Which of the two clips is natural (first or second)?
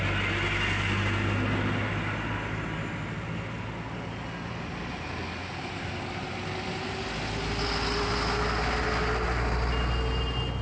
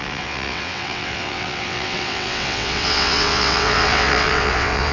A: first